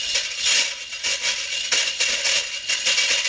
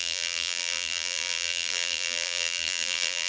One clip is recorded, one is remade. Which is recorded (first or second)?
first